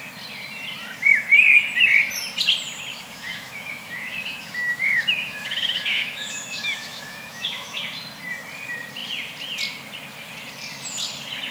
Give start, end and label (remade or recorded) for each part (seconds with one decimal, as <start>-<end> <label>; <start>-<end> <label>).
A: 0.0-2.9 recorded; 2.9-7.8 remade; 7.8-11.5 recorded